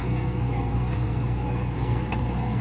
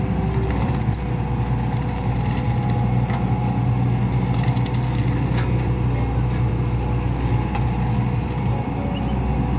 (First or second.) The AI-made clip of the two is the first